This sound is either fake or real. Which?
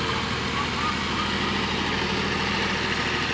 real